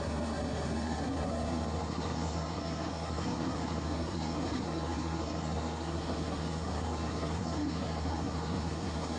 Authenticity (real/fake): fake